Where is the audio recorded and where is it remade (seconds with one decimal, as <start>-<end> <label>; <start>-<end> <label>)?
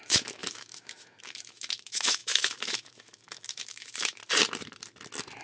0.0-4.2 remade; 4.2-5.4 recorded